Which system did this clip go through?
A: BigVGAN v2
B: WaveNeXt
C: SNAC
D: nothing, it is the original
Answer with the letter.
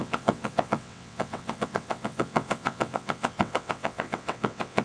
B